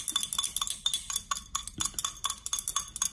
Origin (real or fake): real